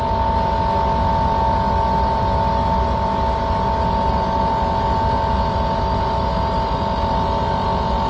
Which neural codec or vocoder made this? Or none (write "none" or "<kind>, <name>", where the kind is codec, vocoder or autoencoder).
none